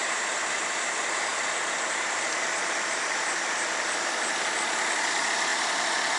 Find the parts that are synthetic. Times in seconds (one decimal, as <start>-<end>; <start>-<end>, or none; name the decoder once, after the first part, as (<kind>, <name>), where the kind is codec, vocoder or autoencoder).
1.3-3.2 (vocoder, BigVGAN v2); 5.5-6.2